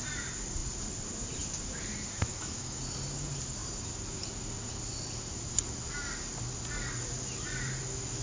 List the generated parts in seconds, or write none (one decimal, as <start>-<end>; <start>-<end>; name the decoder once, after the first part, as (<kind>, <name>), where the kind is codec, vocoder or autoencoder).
2.3-2.8 (autoencoder, DAC-VAE)